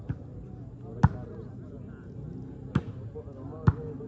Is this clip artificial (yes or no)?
no